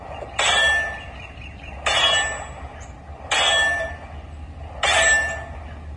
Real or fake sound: real